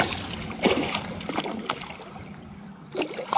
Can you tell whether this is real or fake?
real